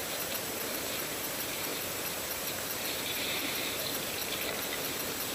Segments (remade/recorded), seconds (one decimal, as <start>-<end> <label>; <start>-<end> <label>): 0.0-4.2 remade; 4.2-4.8 recorded; 4.8-5.3 remade